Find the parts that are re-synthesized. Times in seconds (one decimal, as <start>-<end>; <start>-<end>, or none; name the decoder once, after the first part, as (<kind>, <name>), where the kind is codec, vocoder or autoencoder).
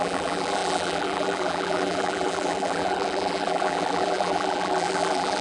0.0-5.4 (vocoder, BigVGAN v2)